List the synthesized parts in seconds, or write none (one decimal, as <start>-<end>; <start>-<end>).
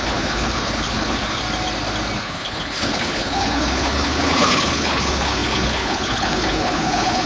0.0-1.4; 2.2-7.3